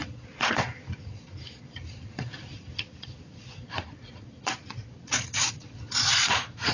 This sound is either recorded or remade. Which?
remade